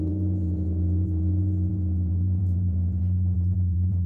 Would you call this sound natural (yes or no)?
no